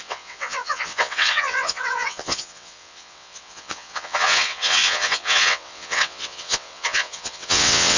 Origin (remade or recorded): remade